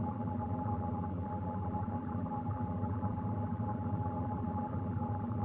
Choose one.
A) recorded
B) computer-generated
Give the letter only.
B